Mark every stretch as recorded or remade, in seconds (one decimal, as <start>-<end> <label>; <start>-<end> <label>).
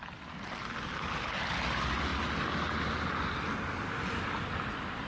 0.0-5.1 recorded